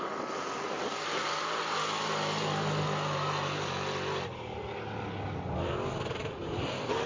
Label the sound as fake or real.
real